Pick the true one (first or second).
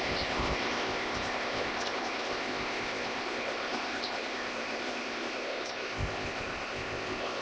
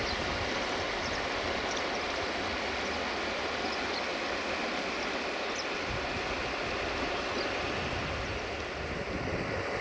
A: second